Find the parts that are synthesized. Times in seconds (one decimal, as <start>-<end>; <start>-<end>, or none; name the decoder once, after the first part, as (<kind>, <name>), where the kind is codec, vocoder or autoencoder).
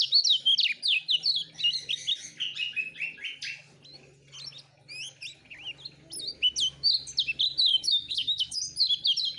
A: 7.7-8.6 (autoencoder, DAC-VAE)